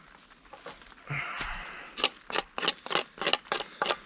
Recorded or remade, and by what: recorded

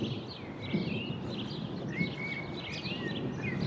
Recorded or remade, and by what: recorded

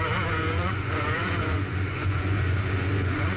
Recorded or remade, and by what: remade, vocoder, Vocos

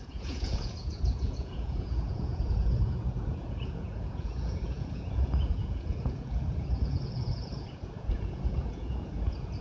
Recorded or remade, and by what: remade, vocoder, Vocos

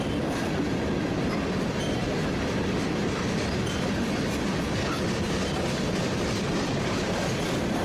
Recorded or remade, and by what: recorded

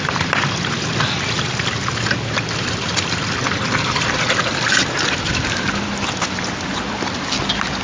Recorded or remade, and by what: recorded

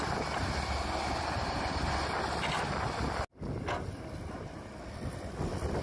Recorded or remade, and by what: recorded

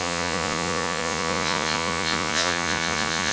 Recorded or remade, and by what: remade, vocoder, Vocos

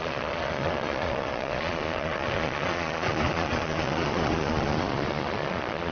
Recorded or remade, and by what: remade, vocoder, Vocos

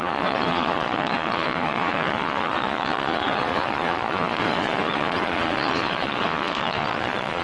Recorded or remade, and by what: remade, vocoder, Vocos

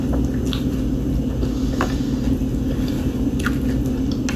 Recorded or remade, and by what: recorded